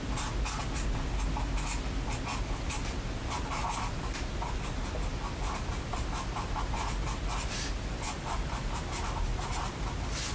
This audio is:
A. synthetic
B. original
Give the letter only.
B